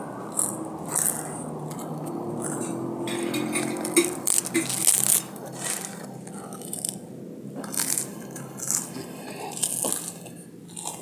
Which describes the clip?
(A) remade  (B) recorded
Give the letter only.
B